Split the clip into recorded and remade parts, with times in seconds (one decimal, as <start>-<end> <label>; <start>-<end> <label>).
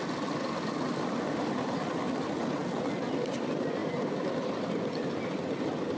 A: 0.0-6.0 recorded